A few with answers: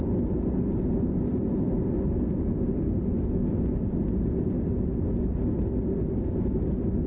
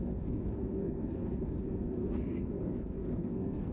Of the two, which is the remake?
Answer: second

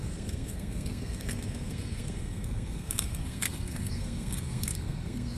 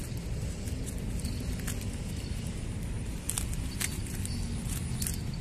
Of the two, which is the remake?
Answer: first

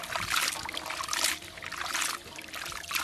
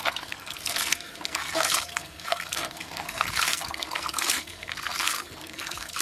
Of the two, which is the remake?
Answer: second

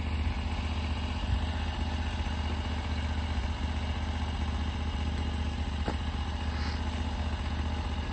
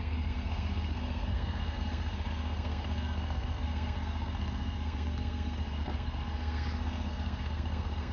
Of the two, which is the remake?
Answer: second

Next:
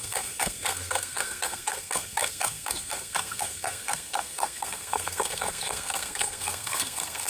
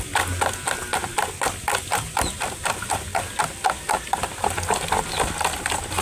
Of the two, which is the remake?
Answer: first